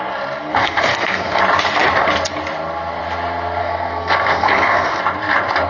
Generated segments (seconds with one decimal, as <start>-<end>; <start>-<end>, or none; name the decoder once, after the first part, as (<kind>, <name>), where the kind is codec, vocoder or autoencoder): 0.6-1.4 (codec, SNAC); 3.6-5.0